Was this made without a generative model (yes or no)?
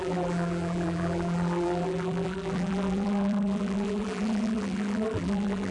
no